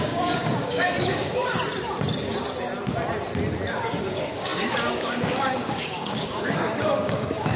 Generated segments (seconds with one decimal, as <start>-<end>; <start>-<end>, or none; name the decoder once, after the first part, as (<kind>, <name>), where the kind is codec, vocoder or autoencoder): 0.0-1.5 (codec, DAC); 3.7-7.6